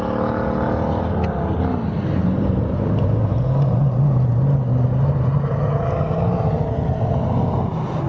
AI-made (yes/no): no